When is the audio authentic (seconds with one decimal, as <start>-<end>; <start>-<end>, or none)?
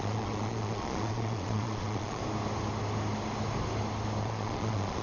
2.2-4.2